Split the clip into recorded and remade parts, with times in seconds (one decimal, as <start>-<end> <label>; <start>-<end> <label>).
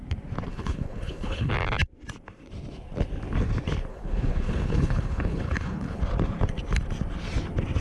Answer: 0.0-0.5 recorded; 0.5-1.5 remade; 1.5-3.9 recorded; 3.9-6.0 remade; 6.0-7.8 recorded